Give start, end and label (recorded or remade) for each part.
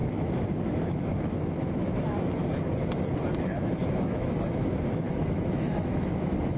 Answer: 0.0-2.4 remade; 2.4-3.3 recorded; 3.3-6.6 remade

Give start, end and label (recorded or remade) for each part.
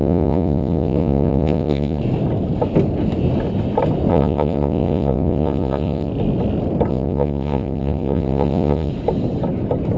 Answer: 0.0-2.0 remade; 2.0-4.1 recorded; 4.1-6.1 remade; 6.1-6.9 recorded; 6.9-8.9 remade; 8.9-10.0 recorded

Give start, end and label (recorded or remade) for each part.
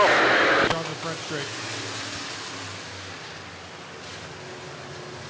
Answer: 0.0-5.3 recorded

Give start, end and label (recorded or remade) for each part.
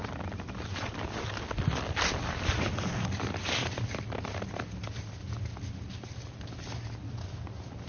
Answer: 0.0-7.9 recorded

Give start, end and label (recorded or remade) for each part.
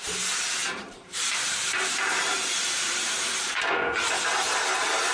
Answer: 0.0-0.6 recorded; 0.6-3.7 remade; 3.7-5.1 recorded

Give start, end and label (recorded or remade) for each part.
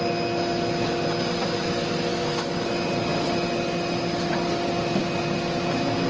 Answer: 0.0-2.1 recorded; 2.1-2.7 remade; 2.7-6.1 recorded